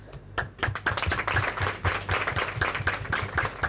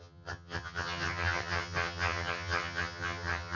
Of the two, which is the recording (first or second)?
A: first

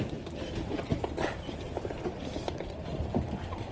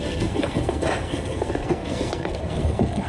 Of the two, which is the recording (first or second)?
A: first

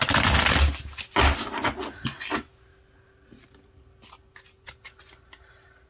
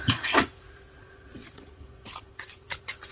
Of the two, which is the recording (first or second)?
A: first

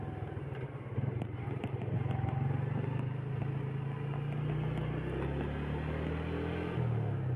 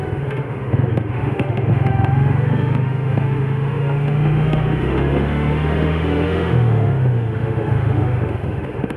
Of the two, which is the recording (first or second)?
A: first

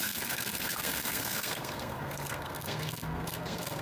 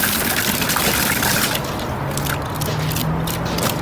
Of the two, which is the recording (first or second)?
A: second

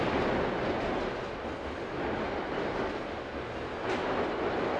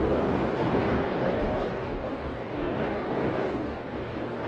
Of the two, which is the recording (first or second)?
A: first